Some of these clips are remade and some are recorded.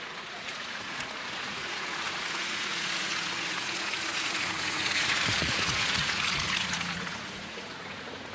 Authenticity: remade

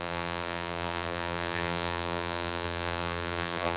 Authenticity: remade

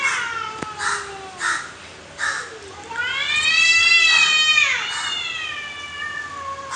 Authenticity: remade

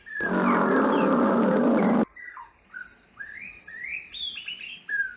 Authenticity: recorded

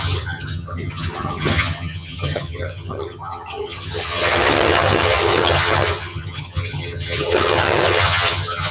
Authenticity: remade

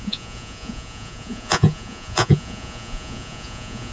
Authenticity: remade